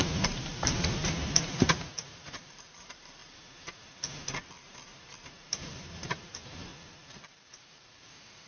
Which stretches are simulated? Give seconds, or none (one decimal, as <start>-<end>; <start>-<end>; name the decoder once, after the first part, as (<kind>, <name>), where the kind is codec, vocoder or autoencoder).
0.0-3.2 (vocoder, BigVGAN v2); 5.3-6.7; 7.5-8.5